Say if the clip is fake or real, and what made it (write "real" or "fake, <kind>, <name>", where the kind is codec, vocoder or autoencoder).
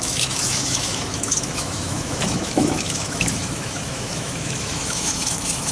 fake, autoencoder, DAC-VAE